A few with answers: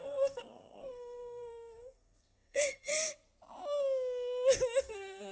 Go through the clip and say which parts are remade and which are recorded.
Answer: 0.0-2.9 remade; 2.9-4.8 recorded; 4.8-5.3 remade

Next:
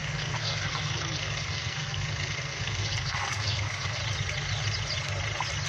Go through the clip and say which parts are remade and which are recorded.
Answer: 0.0-4.0 remade; 4.0-5.7 recorded

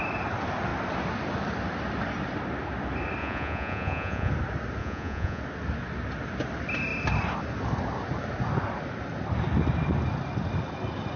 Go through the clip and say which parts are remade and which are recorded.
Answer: 0.0-3.2 recorded; 3.2-4.3 remade; 4.3-4.8 recorded; 4.8-5.4 remade; 5.4-11.2 recorded

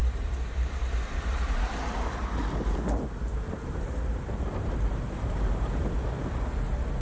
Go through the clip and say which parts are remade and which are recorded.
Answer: 0.0-2.4 remade; 2.4-3.3 recorded; 3.3-5.9 remade; 5.9-7.0 recorded

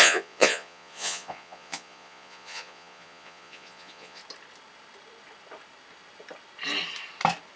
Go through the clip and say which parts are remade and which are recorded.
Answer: 0.0-4.2 remade; 4.2-7.6 recorded